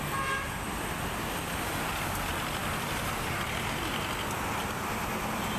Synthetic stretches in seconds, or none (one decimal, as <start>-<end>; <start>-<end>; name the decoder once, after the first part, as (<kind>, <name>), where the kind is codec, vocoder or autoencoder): none